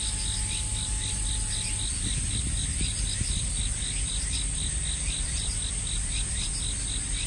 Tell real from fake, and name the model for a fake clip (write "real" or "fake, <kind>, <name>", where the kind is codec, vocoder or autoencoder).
real